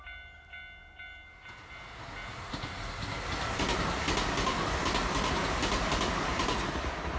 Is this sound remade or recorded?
recorded